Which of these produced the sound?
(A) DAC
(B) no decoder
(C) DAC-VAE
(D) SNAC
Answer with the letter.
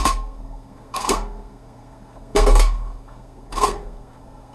D